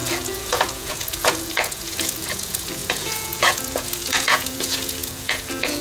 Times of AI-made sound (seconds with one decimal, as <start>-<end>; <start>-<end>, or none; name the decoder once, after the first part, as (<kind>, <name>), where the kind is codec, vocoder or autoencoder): 0.0-5.8 (vocoder, Vocos)